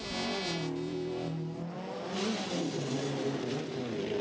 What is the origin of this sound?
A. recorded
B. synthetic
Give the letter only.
A